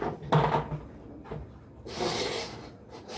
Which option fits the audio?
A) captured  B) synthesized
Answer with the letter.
A